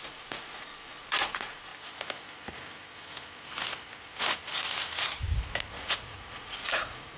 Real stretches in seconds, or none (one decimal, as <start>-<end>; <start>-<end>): 1.7-5.7